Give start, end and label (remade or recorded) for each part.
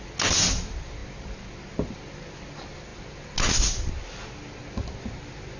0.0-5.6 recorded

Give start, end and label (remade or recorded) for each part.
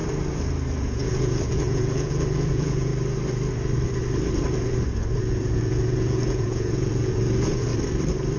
0.0-0.8 recorded; 0.8-2.9 remade; 2.9-5.2 recorded; 5.2-7.7 remade; 7.7-8.4 recorded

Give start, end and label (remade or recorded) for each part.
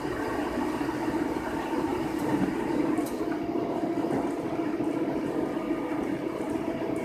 0.0-7.0 recorded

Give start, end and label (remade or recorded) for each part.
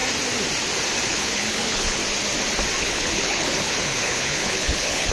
0.0-1.1 recorded; 1.1-2.0 remade; 2.0-2.8 recorded; 2.8-5.1 remade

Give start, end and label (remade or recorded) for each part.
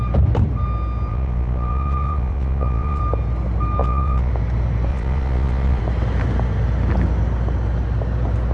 0.0-1.1 recorded; 1.1-3.0 remade; 3.0-3.8 recorded; 3.8-4.3 remade; 4.3-4.9 recorded; 4.9-5.8 remade; 5.8-8.5 recorded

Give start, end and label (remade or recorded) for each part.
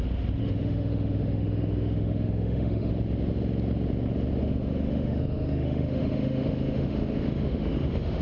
0.0-0.4 recorded; 0.4-2.9 remade; 2.9-4.4 recorded; 4.4-8.2 remade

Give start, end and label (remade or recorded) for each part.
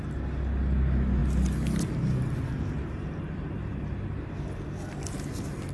0.0-5.7 recorded